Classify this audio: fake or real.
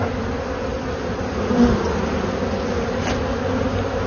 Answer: real